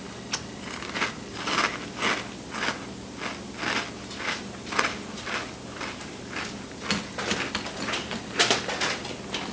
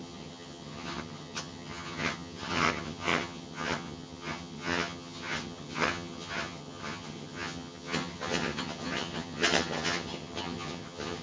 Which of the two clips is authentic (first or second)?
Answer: first